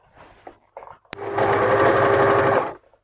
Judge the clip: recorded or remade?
recorded